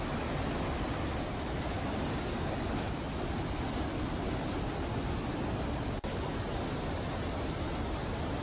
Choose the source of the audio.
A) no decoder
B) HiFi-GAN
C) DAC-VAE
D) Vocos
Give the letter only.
A